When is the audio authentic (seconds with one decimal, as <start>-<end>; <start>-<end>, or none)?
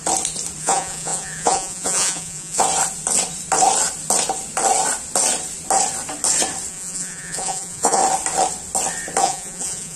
0.0-0.6; 2.6-6.7; 8.0-9.2